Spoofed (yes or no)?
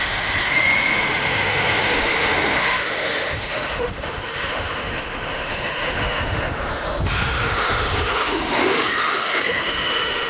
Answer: yes